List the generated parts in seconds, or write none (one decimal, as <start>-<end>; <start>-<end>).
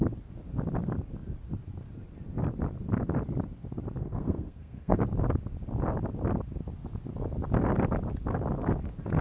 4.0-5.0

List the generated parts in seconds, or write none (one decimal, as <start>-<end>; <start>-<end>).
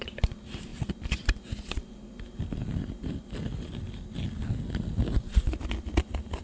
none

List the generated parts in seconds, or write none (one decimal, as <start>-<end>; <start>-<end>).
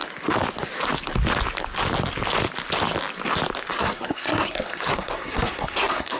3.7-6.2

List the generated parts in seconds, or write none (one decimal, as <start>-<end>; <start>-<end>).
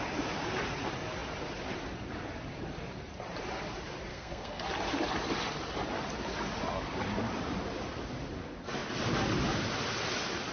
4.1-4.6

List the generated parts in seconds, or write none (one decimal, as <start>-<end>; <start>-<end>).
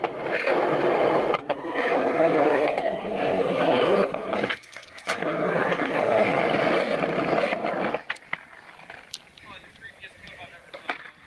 1.4-6.4